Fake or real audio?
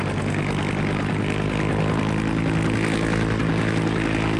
real